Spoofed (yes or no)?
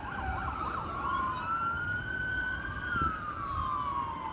yes